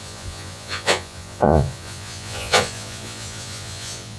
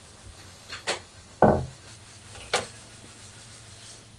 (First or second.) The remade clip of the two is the first